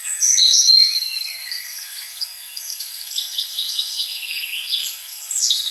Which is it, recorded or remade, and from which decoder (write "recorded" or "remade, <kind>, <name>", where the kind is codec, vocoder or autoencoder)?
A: remade, codec, SNAC